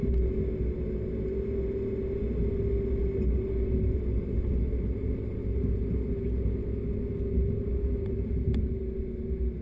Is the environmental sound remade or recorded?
recorded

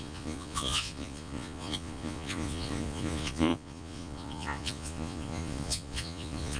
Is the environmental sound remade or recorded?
remade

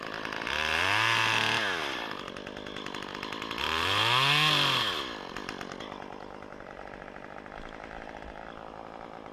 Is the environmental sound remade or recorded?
recorded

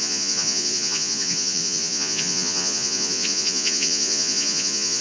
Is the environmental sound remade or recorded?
remade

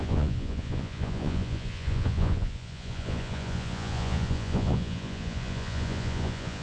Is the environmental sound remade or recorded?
remade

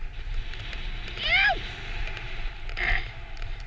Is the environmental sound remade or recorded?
recorded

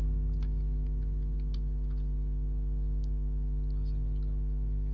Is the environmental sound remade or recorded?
recorded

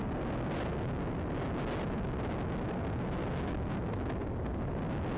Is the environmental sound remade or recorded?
recorded